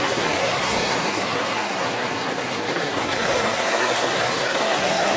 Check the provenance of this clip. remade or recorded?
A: remade